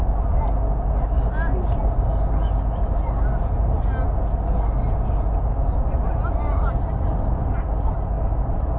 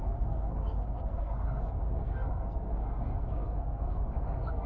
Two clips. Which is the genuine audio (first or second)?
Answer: first